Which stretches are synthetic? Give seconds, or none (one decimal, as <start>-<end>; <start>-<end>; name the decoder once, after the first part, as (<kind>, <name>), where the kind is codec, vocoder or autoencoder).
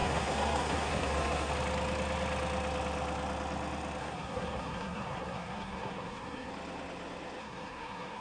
0.0-1.5 (codec, SNAC); 4.0-6.5; 7.4-8.2